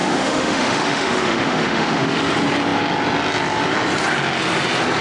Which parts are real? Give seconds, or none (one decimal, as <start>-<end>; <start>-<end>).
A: 2.2-5.0